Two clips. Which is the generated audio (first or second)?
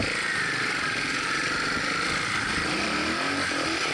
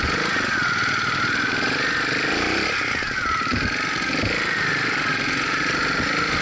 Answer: first